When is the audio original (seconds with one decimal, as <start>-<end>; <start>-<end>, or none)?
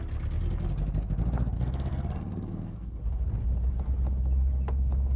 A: 0.0-1.9; 3.0-5.2